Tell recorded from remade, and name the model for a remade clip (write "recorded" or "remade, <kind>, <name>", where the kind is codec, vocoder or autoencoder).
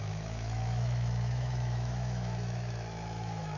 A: remade, autoencoder, DAC-VAE